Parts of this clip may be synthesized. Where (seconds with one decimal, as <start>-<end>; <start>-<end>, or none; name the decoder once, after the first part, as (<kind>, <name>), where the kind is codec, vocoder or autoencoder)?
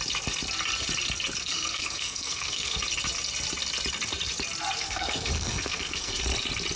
1.4-2.8 (codec, SNAC); 4.8-6.2